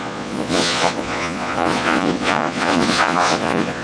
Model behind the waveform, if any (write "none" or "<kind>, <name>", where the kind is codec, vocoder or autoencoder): vocoder, Vocos